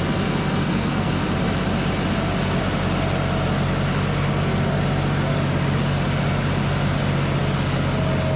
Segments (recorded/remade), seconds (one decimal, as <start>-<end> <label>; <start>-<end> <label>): 0.0-0.6 recorded; 0.6-1.1 remade; 1.1-8.4 recorded